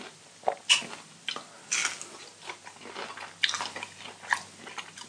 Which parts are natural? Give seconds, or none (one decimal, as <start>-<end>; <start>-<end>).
0.0-5.1